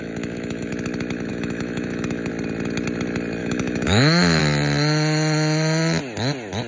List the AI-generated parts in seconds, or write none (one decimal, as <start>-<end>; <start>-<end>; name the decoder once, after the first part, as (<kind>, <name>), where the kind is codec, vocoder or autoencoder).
0.0-0.7 (autoencoder, DAC-VAE); 1.3-2.3; 3.4-4.4